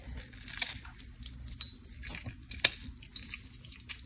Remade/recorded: recorded